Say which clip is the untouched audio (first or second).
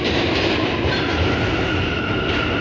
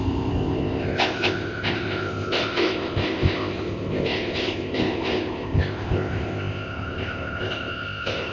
first